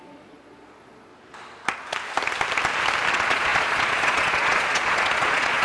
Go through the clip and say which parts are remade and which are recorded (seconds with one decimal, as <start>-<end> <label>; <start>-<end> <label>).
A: 0.0-1.1 remade; 1.1-3.1 recorded; 3.1-5.6 remade

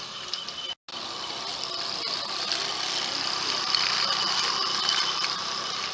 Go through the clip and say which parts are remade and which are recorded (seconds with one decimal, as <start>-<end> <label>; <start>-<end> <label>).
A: 0.0-5.9 recorded

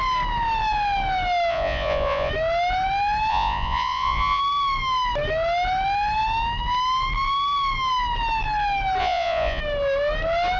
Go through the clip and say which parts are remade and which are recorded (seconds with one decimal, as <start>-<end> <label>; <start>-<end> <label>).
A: 0.0-1.5 recorded; 1.5-2.3 remade; 2.3-3.3 recorded; 3.3-4.4 remade; 4.4-9.0 recorded; 9.0-9.6 remade; 9.6-10.6 recorded